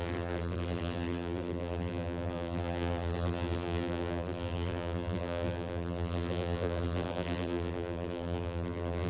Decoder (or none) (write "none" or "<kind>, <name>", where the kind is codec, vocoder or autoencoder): vocoder, BigVGAN v2